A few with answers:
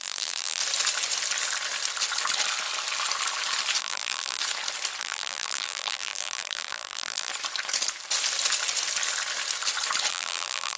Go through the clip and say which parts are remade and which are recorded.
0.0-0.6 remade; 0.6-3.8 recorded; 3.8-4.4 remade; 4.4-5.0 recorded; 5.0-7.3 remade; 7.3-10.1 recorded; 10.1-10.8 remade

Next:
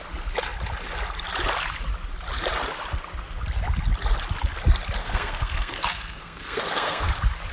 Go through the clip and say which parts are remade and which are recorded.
0.0-5.0 recorded; 5.0-7.1 remade; 7.1-7.5 recorded

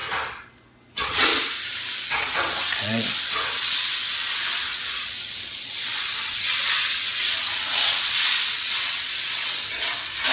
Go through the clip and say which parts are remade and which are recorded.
0.0-0.9 recorded; 0.9-1.3 remade; 1.3-2.1 recorded; 2.1-10.3 remade

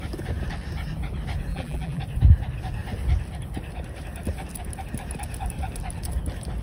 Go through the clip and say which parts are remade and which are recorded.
0.0-1.5 recorded; 1.5-2.0 remade; 2.0-6.6 recorded

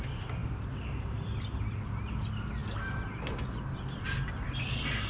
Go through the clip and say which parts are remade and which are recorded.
0.0-0.4 recorded; 0.4-2.0 remade; 2.0-5.1 recorded

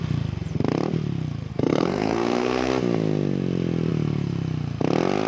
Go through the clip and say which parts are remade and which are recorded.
0.0-1.5 recorded; 1.5-2.7 remade; 2.7-5.3 recorded

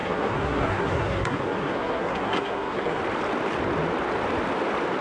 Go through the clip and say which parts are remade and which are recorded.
0.0-3.0 remade; 3.0-5.0 recorded